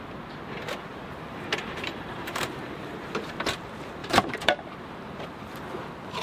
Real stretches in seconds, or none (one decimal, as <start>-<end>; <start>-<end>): 0.0-0.9; 3.3-4.0; 5.2-6.2